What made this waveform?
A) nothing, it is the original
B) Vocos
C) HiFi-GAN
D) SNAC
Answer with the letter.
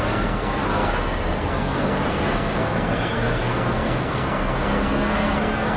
D